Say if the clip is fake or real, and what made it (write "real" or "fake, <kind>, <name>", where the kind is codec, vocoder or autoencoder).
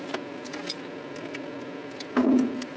real